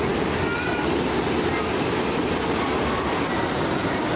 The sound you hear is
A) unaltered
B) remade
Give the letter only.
A